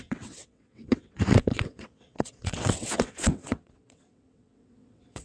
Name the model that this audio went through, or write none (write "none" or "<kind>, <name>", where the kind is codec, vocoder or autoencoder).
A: vocoder, WaveNeXt